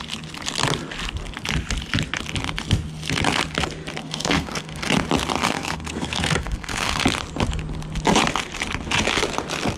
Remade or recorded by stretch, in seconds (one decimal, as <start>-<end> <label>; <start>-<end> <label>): 0.0-4.0 recorded; 4.0-4.9 remade; 4.9-5.4 recorded; 5.4-7.0 remade; 7.0-9.8 recorded